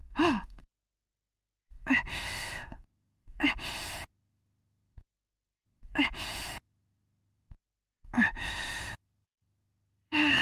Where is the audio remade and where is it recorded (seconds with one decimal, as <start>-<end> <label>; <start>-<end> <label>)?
0.0-10.4 remade